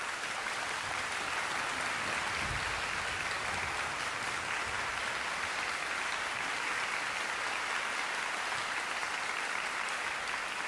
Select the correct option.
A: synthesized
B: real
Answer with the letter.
B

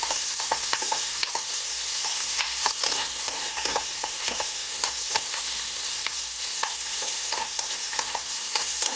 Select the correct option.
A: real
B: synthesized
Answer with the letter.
B